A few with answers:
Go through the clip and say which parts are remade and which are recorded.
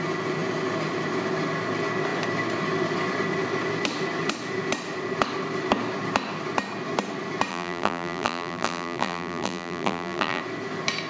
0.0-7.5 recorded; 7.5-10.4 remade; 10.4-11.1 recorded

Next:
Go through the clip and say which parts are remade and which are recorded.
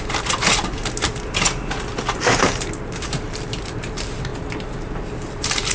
0.0-0.8 remade; 0.8-2.0 recorded; 2.0-4.3 remade; 4.3-4.8 recorded; 4.8-5.7 remade